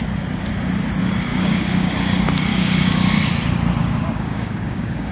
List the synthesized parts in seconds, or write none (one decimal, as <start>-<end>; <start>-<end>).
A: 1.3-1.9; 2.5-3.3; 3.8-5.1